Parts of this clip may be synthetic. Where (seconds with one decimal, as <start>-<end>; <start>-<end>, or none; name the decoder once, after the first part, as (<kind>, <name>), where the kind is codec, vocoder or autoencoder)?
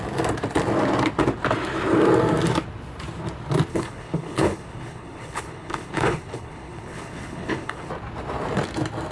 3.7-7.9 (codec, HILCodec)